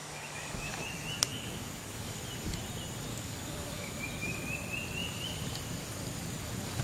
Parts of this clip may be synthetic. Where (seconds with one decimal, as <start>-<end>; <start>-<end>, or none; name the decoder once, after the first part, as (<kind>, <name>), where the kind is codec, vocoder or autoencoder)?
0.0-0.8 (codec, DAC); 1.3-2.2; 3.1-4.0